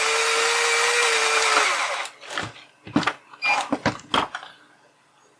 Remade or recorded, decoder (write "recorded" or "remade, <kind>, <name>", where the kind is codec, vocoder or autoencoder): recorded